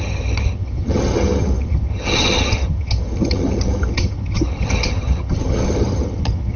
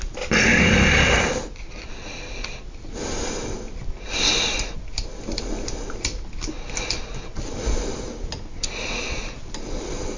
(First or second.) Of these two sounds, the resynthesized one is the first